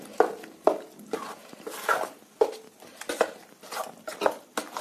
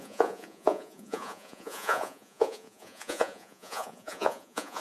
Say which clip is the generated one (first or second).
second